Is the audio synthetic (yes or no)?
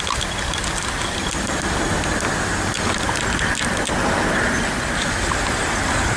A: no